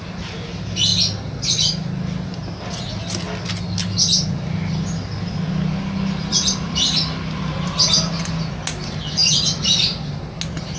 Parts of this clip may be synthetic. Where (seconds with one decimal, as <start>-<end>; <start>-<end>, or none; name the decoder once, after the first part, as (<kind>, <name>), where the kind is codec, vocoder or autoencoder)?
6.3-6.9 (vocoder, BigVGAN v2); 9.2-10.1